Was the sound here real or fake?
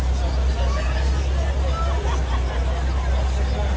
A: real